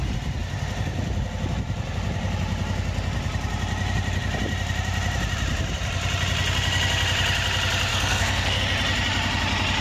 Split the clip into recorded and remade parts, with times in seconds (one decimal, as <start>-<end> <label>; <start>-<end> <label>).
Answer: 0.0-7.9 recorded; 7.9-8.6 remade; 8.6-9.8 recorded